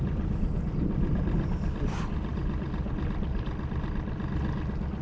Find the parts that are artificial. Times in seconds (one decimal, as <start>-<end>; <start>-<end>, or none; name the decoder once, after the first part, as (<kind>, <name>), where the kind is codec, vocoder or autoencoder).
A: none